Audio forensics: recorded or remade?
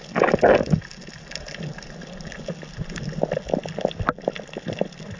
recorded